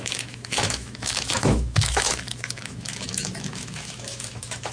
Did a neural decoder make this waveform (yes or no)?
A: yes